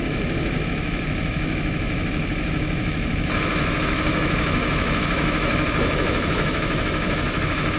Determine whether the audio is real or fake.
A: fake